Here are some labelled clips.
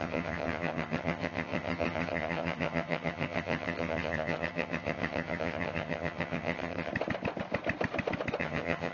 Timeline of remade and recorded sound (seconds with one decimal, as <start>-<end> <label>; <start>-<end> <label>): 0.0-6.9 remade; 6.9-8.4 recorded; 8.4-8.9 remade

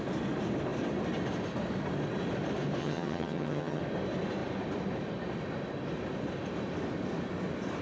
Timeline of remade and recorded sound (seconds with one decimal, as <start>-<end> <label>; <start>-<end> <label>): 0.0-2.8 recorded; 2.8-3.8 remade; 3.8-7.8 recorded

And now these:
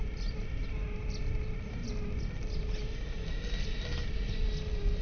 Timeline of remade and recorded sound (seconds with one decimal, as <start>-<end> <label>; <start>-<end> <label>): 0.0-5.0 recorded

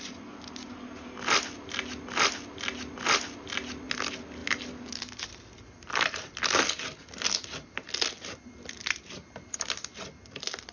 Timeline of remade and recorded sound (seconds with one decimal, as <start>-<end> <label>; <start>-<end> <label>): 0.0-10.7 recorded

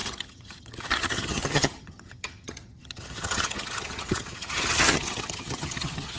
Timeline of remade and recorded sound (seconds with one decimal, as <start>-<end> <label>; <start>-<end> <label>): 0.0-6.2 remade

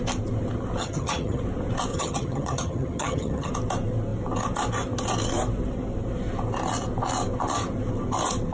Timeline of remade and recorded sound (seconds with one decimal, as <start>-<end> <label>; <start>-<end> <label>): 0.0-0.8 recorded; 0.8-1.4 remade; 1.4-1.9 recorded; 1.9-3.5 remade; 3.5-8.5 recorded